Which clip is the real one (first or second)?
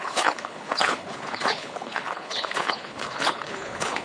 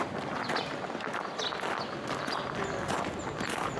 second